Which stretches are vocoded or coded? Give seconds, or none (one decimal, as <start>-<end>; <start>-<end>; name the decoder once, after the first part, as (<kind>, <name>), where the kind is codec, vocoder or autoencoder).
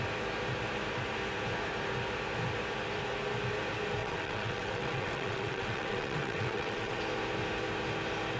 4.0-7.0 (vocoder, WaveNeXt)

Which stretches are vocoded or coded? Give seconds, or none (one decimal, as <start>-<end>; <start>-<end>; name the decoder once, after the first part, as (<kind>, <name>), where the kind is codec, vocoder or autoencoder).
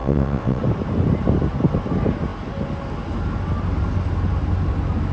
0.0-0.6 (vocoder, WaveNeXt)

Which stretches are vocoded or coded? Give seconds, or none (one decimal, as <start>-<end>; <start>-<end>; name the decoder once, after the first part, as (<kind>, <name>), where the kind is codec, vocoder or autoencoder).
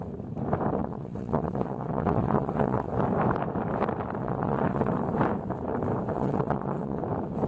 0.8-2.9 (vocoder, WaveNeXt); 4.2-4.9; 6.1-7.0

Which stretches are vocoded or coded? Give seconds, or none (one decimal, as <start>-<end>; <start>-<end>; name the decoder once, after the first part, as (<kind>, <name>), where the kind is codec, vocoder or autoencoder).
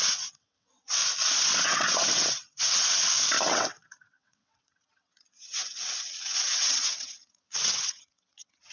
0.0-1.0 (vocoder, WaveNeXt); 1.6-3.0; 3.5-8.7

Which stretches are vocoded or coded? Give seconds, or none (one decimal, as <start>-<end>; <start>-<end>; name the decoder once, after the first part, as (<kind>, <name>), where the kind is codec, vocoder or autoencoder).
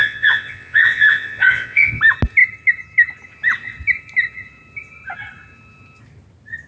0.0-2.0 (vocoder, WaveNeXt)